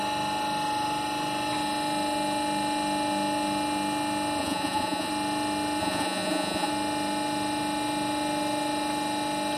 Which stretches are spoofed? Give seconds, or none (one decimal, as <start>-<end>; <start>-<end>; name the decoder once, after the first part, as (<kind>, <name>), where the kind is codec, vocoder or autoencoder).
4.4-5.1 (vocoder, Vocos); 5.8-6.7